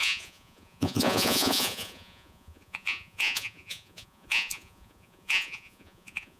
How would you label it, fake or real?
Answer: fake